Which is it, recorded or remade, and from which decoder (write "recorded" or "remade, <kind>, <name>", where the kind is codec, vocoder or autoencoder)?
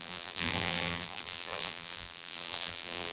remade, vocoder, BigVGAN v2